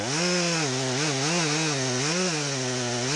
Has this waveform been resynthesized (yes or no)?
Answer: no